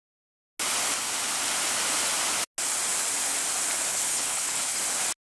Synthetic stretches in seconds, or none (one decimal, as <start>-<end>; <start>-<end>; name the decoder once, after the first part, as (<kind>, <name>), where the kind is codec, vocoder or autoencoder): 3.9-4.8 (codec, HILCodec)